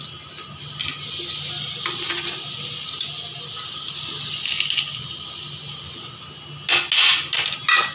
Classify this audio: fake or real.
real